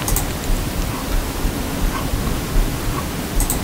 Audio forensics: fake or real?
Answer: real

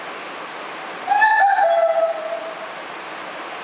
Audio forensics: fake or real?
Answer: real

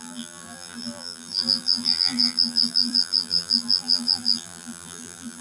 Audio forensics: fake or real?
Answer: fake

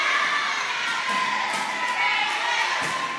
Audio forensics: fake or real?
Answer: real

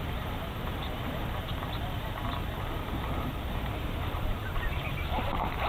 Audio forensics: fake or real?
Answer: fake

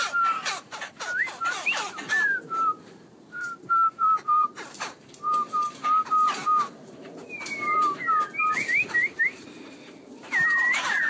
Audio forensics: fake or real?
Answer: fake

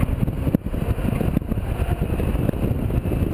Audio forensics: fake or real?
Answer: real